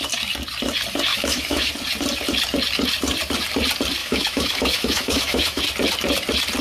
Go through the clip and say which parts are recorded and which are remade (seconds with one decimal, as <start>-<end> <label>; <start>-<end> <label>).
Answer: 0.0-1.1 recorded; 1.1-1.7 remade; 1.7-4.0 recorded; 4.0-5.6 remade; 5.6-6.6 recorded

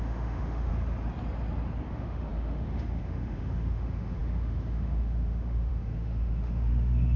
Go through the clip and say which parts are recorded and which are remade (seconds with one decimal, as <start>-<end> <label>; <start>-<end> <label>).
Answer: 0.0-0.7 remade; 0.7-1.9 recorded; 1.9-7.2 remade